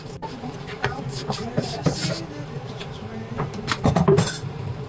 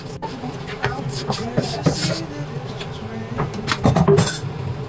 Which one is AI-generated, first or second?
first